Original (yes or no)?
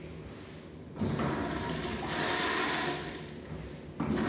yes